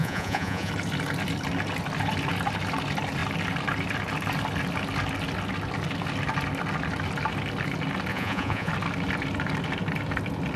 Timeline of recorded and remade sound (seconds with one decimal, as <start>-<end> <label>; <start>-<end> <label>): 0.0-0.7 remade; 0.7-8.1 recorded; 8.1-8.7 remade; 8.7-10.6 recorded